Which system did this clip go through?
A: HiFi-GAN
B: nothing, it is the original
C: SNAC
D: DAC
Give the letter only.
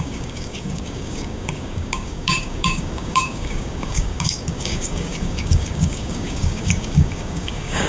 D